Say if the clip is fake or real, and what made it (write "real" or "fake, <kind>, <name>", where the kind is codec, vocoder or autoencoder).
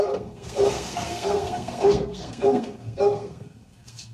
fake, codec, SNAC